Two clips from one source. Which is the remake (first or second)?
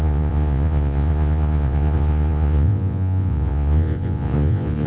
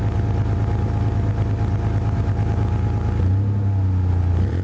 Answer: first